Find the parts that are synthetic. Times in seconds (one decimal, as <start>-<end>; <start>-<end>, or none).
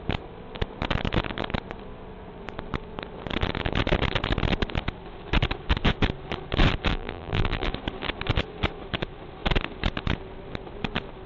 6.9-7.7